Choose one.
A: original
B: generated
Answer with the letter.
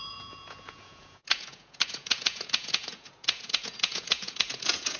B